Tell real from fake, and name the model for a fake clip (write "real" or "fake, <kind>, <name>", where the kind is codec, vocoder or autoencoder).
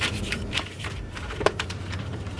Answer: fake, vocoder, BigVGAN v2